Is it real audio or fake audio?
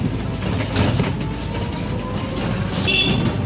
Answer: real